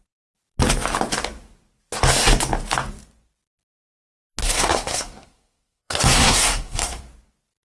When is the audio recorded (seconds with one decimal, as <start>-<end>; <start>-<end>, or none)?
0.0-4.4; 7.0-7.8